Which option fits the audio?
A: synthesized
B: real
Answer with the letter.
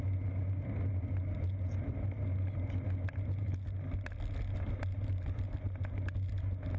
B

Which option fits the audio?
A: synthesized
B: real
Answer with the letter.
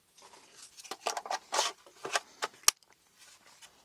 B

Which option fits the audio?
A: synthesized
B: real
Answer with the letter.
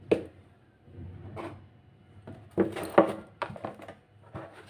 B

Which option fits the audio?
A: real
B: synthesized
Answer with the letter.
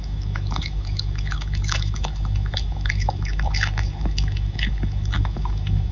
B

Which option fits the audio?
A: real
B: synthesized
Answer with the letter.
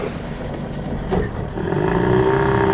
A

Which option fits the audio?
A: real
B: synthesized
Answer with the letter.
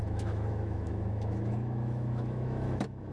B